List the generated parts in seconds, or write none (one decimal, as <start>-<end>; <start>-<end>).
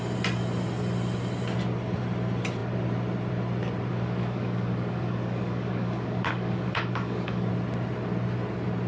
3.9-7.5